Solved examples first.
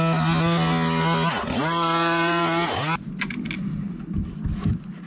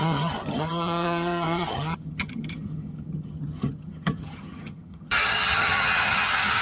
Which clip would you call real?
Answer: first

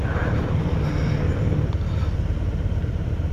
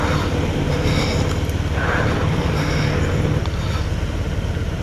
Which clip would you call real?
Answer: second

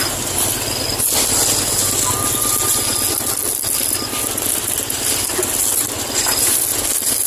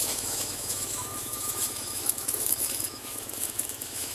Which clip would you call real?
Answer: first